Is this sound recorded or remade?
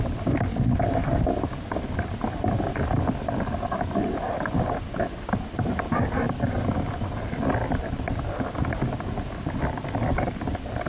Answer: recorded